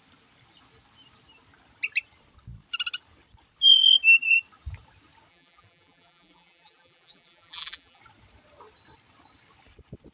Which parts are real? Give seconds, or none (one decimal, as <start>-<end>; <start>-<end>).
0.0-5.3; 8.0-10.1